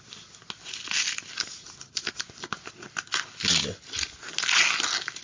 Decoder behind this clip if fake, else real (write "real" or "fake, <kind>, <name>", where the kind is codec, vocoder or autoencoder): real